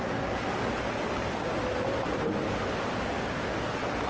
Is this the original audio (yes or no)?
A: yes